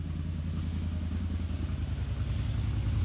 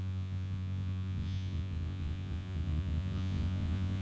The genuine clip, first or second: first